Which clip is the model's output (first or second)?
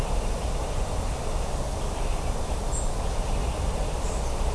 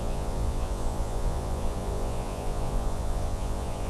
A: second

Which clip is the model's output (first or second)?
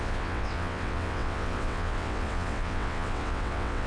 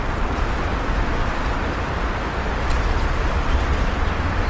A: first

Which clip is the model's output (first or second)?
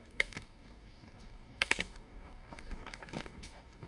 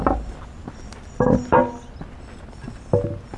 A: first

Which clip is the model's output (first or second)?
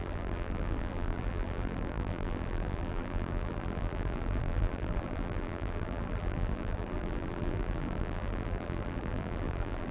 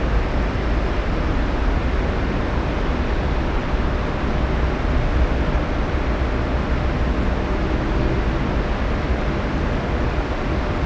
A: first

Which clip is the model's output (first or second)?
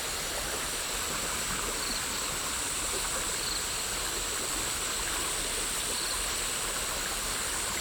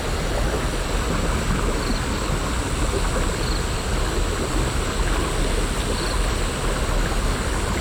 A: first